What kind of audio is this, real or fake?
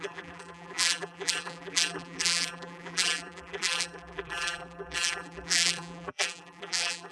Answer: fake